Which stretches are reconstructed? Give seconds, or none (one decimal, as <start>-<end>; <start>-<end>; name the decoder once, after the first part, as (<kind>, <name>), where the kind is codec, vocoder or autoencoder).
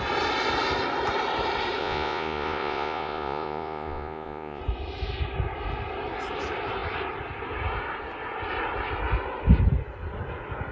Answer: 1.8-4.6 (vocoder, Vocos)